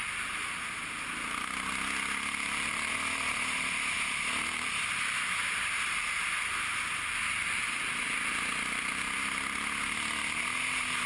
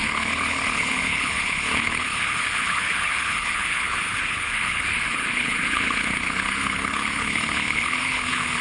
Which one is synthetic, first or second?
second